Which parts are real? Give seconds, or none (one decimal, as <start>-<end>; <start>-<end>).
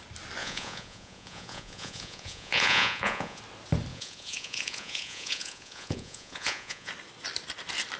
0.0-0.4; 3.4-3.9; 6.9-8.0